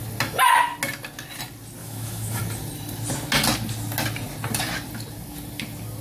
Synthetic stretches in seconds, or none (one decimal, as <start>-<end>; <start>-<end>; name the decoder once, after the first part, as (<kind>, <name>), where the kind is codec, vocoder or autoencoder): 1.8-2.4 (autoencoder, DAC-VAE)